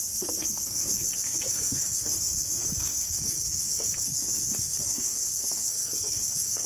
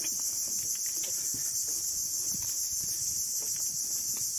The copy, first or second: first